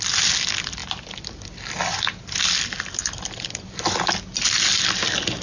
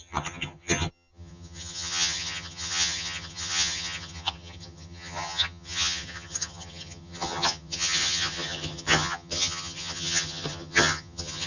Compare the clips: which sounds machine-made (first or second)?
second